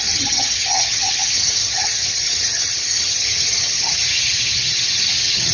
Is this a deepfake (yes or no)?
yes